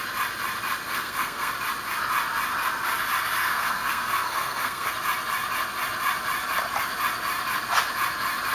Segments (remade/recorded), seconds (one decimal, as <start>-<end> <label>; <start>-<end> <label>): 0.0-0.9 recorded; 0.9-1.5 remade; 1.5-3.4 recorded; 3.4-4.9 remade; 4.9-8.5 recorded